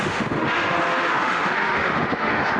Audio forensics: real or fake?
fake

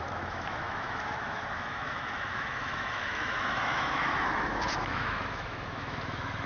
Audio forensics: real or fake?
fake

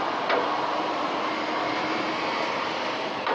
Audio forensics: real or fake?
real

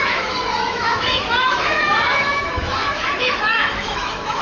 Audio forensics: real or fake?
fake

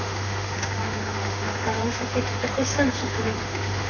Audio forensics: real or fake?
fake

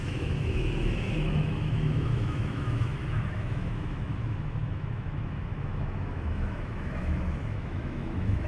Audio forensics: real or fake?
fake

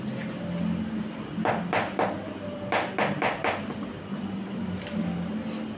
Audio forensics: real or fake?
real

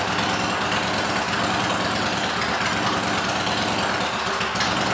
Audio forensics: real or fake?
real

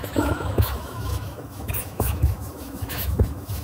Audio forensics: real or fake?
fake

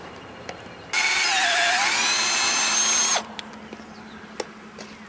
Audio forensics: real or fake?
real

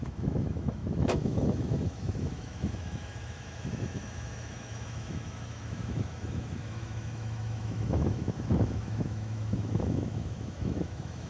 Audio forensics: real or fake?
fake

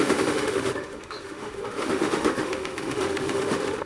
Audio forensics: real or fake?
fake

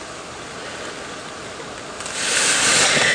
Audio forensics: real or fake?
real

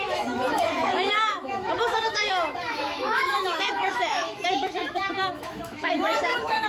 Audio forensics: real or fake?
fake